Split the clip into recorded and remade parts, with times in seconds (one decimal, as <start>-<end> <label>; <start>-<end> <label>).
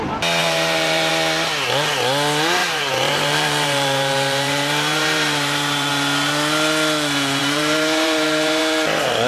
0.0-0.4 recorded; 0.4-1.1 remade; 1.1-2.6 recorded; 2.6-5.9 remade; 5.9-7.4 recorded; 7.4-8.6 remade; 8.6-9.3 recorded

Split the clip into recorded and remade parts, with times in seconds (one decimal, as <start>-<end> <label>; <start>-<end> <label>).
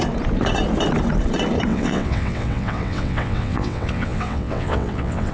0.0-1.7 recorded; 1.7-5.3 remade